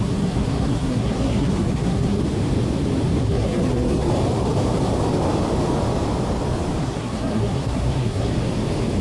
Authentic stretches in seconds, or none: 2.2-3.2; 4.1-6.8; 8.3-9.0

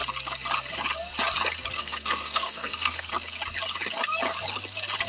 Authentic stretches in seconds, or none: 0.0-1.8; 3.1-5.1

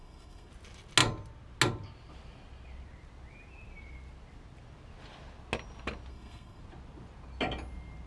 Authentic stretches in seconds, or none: 0.5-6.1; 6.6-8.1

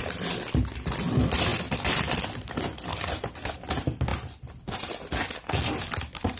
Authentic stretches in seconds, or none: 0.0-6.4

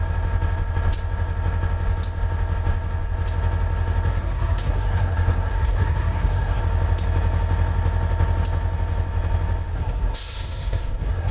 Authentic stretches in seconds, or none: 0.0-4.1; 6.6-9.7

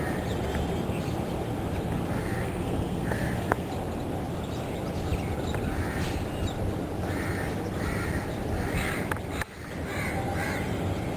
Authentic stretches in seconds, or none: 0.0-2.2; 3.7-11.2

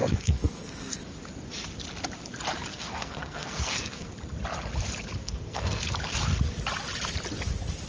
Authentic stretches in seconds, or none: 1.0-2.7; 4.1-5.2; 5.8-7.9

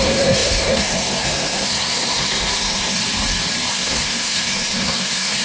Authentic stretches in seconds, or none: 3.0-3.7